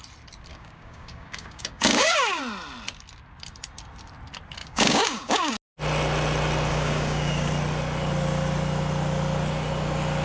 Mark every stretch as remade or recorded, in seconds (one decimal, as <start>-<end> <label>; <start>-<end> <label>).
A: 0.0-0.5 recorded; 0.5-2.4 remade; 2.4-4.6 recorded; 4.6-5.5 remade; 5.5-6.7 recorded; 6.7-7.5 remade; 7.5-10.2 recorded